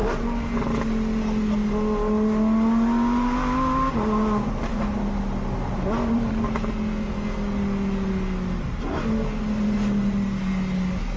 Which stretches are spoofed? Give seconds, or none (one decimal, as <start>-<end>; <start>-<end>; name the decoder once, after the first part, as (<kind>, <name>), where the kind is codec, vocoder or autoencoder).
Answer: none